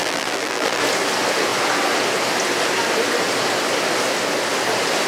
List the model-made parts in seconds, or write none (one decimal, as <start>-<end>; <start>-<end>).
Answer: 0.0-0.8